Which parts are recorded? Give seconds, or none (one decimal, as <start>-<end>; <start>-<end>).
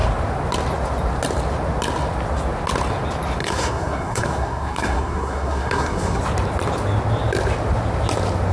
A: 0.0-3.4; 6.2-8.5